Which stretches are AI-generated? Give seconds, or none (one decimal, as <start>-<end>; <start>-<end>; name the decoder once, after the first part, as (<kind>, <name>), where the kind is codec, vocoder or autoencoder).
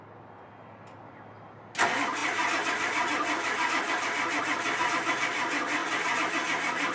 none